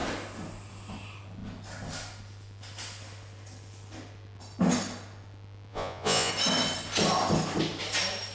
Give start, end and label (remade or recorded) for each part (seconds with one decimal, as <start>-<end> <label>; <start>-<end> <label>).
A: 0.0-5.7 recorded; 5.7-6.3 remade; 6.3-8.3 recorded